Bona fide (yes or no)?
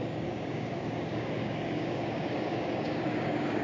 no